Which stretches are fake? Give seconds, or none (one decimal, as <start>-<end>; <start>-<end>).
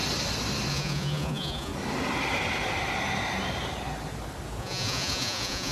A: 0.7-1.7; 4.6-5.7